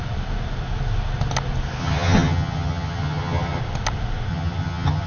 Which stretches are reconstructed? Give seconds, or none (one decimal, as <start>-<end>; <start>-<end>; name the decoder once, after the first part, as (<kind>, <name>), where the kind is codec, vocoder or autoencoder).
1.8-3.6 (vocoder, HiFi-GAN); 4.3-5.1